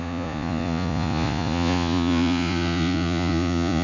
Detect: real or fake fake